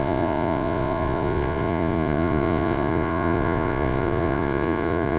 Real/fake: fake